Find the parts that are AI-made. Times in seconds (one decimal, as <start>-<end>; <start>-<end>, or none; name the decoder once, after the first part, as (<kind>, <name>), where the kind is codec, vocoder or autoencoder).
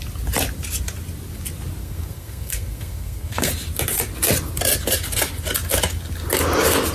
1.8-3.5 (codec, SNAC)